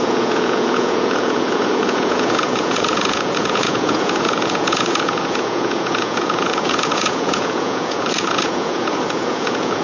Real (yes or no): no